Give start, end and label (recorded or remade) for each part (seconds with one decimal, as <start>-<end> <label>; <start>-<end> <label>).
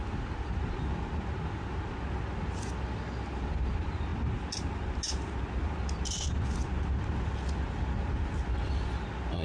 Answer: 0.0-9.4 recorded